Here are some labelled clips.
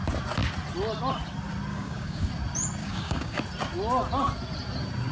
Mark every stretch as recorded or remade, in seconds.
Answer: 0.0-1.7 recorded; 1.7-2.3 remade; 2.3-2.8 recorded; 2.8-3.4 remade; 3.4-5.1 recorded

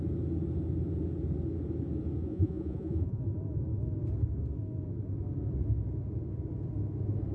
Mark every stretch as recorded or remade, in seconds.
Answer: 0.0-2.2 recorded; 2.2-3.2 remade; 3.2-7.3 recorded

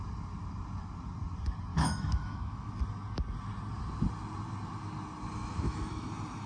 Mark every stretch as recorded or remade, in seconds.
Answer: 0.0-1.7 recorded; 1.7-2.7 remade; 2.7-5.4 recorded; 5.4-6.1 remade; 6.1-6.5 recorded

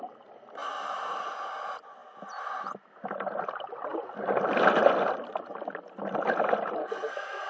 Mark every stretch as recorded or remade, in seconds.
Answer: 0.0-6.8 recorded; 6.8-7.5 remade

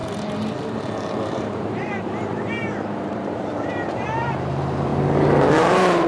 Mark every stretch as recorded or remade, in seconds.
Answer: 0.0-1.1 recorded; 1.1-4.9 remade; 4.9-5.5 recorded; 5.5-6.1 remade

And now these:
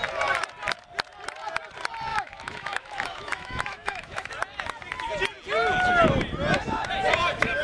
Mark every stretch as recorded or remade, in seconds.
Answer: 0.0-2.1 recorded; 2.1-4.3 remade; 4.3-7.6 recorded

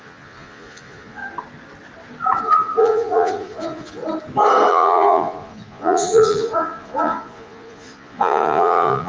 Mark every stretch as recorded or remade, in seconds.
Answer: 0.0-1.2 remade; 1.2-2.4 recorded; 2.4-4.0 remade; 4.0-4.7 recorded; 4.7-9.1 remade